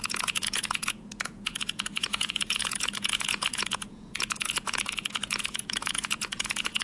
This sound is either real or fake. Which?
fake